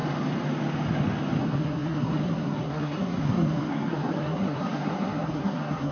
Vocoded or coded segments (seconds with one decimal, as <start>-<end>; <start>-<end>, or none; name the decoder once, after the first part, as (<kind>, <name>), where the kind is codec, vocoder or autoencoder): 1.4-5.9 (codec, SNAC)